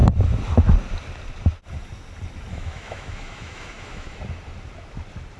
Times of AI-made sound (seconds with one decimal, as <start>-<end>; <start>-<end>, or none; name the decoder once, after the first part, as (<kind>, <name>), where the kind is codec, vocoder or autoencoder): 2.5-4.2 (autoencoder, DAC-VAE)